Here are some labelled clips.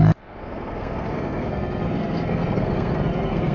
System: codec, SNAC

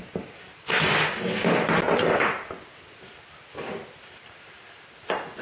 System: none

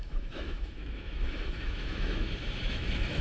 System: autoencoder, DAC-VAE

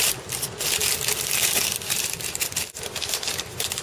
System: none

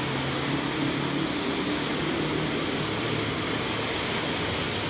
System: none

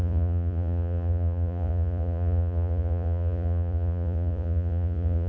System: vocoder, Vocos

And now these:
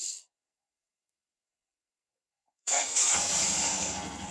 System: codec, SNAC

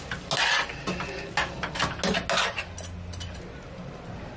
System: none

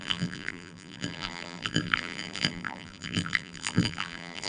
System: vocoder, BigVGAN v2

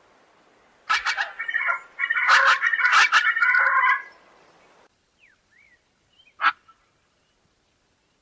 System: none